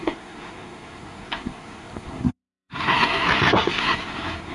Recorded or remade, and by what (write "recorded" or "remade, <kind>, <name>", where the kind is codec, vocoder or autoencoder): remade, codec, SNAC